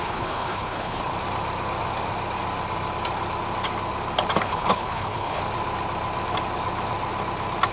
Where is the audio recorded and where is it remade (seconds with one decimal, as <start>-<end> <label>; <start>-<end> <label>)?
0.0-1.1 remade; 1.1-4.4 recorded; 4.4-5.4 remade; 5.4-7.7 recorded